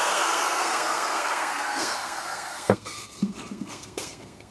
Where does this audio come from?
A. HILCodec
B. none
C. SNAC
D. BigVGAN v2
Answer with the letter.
C